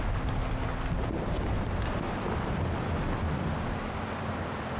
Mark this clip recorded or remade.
recorded